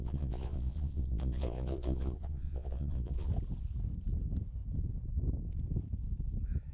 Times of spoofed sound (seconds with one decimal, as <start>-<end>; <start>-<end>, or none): 0.0-3.3